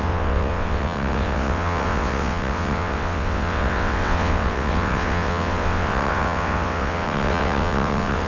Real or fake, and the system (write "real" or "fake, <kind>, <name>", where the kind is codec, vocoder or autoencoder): fake, vocoder, WaveNeXt